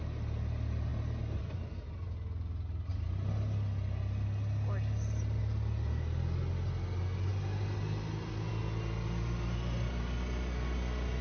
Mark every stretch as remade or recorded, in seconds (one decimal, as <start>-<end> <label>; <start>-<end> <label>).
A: 0.0-11.2 recorded